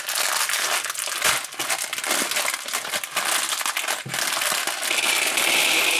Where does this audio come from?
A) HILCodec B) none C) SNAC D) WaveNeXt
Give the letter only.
B